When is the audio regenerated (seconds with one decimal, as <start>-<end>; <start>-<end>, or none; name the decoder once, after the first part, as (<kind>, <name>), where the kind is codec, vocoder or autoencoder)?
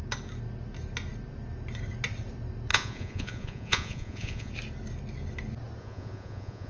2.7-4.5 (vocoder, Vocos); 5.8-6.7